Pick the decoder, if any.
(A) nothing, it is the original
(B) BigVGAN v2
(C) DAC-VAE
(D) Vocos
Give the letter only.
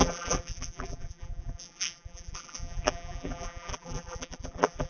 B